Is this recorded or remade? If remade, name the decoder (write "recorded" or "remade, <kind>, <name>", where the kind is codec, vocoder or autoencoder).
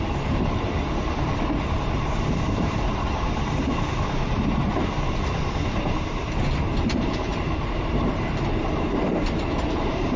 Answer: remade, vocoder, BigVGAN v2